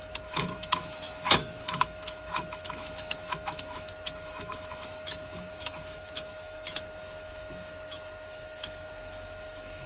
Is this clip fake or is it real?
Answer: fake